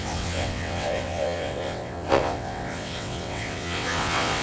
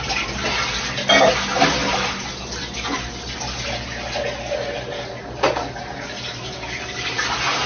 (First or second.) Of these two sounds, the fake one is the first